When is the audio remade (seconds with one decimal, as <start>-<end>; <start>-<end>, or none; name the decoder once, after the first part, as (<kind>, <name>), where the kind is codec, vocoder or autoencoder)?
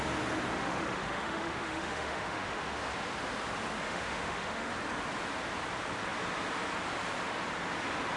0.5-2.8 (autoencoder, DAC-VAE); 3.8-4.7